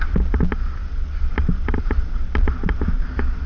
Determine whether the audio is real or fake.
real